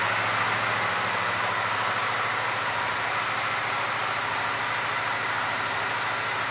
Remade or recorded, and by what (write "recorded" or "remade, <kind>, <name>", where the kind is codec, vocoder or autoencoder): recorded